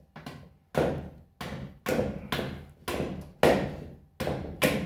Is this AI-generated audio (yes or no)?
no